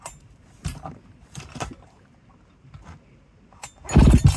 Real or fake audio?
real